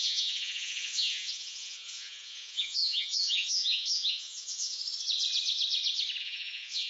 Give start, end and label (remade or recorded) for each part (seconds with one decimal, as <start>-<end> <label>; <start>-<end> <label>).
0.0-4.8 remade; 4.8-6.2 recorded; 6.2-6.9 remade